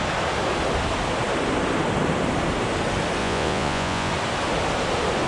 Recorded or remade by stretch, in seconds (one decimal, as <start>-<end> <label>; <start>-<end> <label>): 0.0-3.2 recorded; 3.2-4.1 remade; 4.1-5.3 recorded